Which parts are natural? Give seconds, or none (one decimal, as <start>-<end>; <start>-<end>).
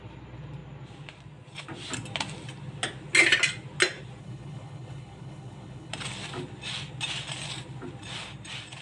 0.0-4.2; 5.9-8.8